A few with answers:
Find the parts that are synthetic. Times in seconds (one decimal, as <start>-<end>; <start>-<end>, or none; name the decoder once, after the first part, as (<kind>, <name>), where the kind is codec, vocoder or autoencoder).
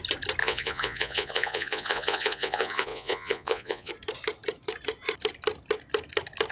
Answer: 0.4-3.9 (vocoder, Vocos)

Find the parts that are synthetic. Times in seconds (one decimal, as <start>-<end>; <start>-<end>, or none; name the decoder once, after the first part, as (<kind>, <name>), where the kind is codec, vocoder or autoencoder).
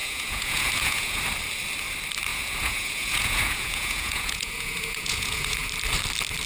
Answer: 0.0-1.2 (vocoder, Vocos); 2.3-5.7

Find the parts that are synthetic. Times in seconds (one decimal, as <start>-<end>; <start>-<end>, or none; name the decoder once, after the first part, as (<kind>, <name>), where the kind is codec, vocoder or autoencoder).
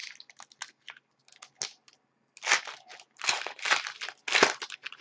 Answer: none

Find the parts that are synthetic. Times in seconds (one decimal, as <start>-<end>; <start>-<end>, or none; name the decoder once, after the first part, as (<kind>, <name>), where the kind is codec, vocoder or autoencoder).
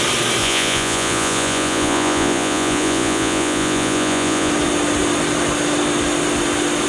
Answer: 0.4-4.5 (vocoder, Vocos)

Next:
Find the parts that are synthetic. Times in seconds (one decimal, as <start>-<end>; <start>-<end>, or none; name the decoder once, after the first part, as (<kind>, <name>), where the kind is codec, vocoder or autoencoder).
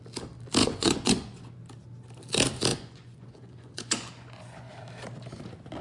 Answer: 0.6-1.4 (vocoder, Vocos); 2.7-4.7